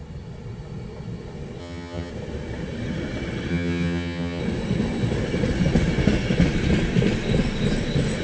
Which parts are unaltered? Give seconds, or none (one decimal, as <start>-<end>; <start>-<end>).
0.0-1.6; 2.1-3.5; 4.4-8.2